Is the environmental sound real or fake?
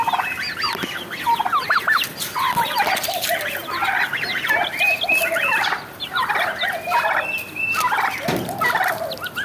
real